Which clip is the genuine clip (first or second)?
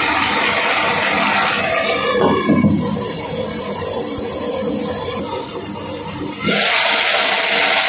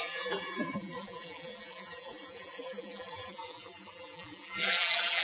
first